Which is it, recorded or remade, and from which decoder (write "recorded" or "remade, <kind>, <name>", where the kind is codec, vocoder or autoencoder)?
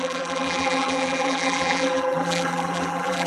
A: remade, vocoder, BigVGAN v2